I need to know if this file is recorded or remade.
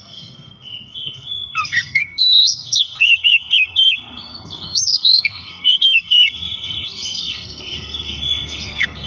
remade